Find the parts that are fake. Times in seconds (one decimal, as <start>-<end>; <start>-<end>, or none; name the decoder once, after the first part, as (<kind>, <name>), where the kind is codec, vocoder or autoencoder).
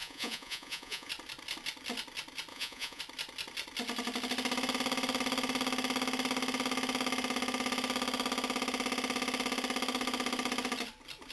0.0-1.1 (vocoder, Vocos); 2.5-3.0